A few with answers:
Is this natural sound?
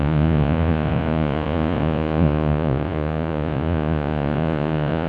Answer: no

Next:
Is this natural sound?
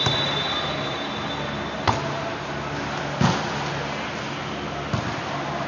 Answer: yes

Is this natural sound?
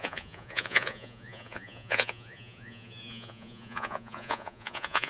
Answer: no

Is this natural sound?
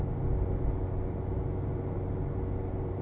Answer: yes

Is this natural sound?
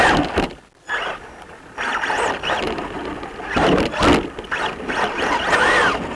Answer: yes